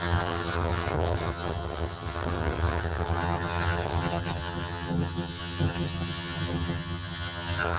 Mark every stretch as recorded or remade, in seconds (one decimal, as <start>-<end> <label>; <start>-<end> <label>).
0.0-7.8 remade

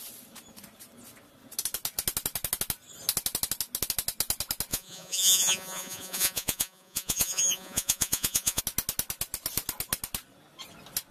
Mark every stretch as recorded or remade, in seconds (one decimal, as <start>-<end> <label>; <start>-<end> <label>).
0.0-4.7 recorded; 4.7-8.6 remade; 8.6-11.1 recorded

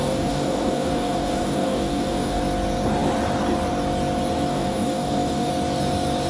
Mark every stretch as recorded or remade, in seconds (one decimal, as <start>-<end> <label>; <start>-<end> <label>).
0.0-2.4 remade; 2.4-4.5 recorded; 4.5-5.5 remade; 5.5-6.3 recorded